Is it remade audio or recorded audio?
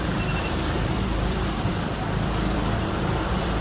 remade